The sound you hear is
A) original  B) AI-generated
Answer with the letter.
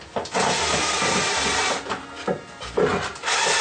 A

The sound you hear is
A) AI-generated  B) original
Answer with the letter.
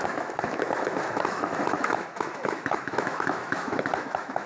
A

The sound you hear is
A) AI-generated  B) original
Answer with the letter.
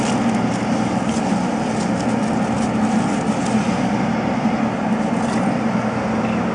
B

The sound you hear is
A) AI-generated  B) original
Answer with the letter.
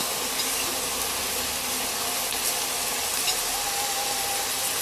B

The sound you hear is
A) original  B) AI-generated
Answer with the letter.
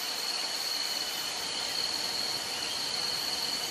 A